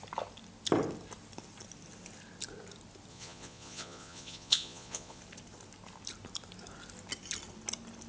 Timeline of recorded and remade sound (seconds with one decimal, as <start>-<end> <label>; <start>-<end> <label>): 0.0-3.1 recorded; 3.1-5.2 remade; 5.2-8.1 recorded